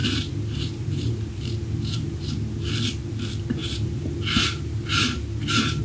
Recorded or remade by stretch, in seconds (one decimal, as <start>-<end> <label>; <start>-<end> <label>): 0.0-2.7 remade; 2.7-3.6 recorded; 3.6-5.8 remade